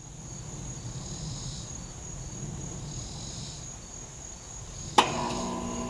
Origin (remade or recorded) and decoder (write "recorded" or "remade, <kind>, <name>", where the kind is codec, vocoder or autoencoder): recorded